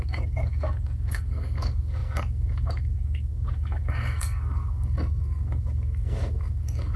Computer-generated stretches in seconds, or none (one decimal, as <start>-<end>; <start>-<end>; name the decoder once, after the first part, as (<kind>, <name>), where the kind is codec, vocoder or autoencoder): 0.0-7.0 (codec, SNAC)